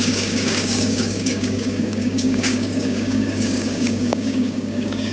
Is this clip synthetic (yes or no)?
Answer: yes